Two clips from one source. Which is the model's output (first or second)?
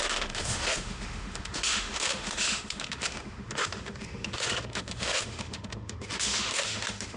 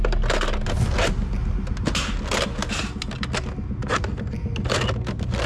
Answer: first